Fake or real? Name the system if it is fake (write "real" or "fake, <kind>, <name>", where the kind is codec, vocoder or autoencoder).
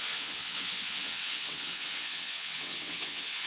fake, vocoder, WaveNeXt